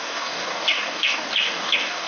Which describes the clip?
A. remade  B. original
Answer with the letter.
A